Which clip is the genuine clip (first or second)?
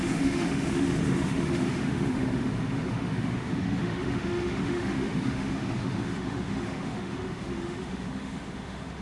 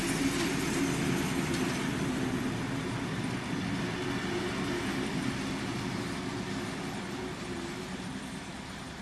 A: second